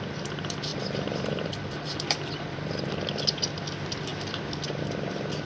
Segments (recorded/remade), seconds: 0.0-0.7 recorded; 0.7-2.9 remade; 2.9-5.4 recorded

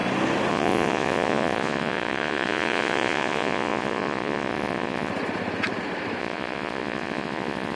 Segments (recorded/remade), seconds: 0.0-0.5 recorded; 0.5-5.1 remade; 5.1-6.2 recorded; 6.2-7.8 remade